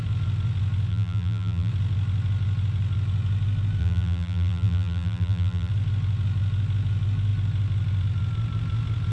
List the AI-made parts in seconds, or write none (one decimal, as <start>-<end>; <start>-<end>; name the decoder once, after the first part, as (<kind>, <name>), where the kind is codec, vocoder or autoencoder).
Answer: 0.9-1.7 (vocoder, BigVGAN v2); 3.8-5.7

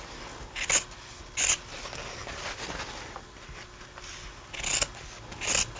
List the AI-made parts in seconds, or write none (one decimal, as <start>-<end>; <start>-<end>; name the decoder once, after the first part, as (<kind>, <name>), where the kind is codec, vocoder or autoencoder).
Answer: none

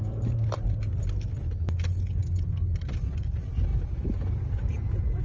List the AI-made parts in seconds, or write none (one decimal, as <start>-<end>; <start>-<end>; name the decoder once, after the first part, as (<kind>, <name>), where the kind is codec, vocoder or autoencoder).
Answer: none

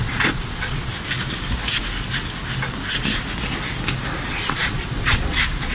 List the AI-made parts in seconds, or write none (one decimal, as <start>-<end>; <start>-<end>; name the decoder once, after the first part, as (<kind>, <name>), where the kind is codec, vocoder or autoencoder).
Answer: 0.0-0.9 (vocoder, Vocos); 4.3-5.7

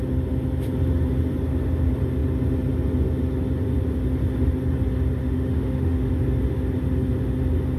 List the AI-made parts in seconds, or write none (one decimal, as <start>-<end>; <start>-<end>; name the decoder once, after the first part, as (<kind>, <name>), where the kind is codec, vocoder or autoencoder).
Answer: 5.2-6.1 (autoencoder, DAC-VAE)

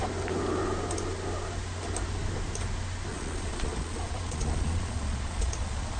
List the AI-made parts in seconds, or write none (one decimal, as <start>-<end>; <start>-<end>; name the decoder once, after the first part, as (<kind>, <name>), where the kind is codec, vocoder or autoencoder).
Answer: 3.1-6.0 (vocoder, Vocos)

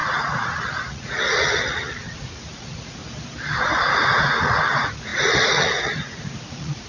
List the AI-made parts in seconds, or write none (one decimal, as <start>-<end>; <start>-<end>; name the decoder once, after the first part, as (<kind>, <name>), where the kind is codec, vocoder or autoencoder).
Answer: 0.0-3.0 (vocoder, Vocos); 3.6-6.9

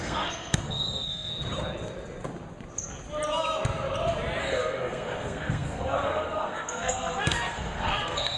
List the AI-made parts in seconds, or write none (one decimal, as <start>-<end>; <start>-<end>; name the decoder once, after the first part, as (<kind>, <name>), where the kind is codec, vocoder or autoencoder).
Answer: 0.0-1.3 (codec, SNAC); 4.4-8.4